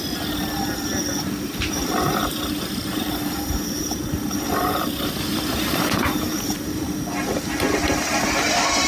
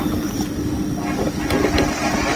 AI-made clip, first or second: first